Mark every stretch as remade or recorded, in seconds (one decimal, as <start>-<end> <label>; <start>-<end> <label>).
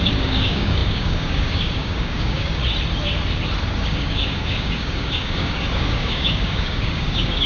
0.0-2.6 remade; 2.6-3.7 recorded; 3.7-7.5 remade